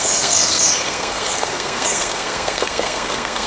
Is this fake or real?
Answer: fake